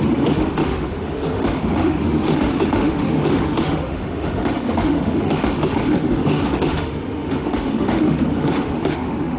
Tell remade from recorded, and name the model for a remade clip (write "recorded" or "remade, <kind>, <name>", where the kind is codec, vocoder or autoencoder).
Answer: remade, autoencoder, DAC-VAE